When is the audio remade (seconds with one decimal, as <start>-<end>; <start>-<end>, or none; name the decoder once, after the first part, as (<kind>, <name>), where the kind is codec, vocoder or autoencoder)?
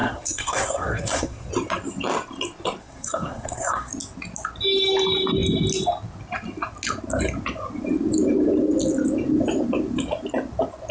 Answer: 0.0-1.5 (codec, SNAC); 2.8-3.9